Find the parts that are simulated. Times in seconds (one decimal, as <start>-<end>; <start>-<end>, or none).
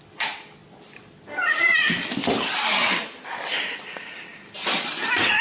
0.0-0.6; 3.8-5.4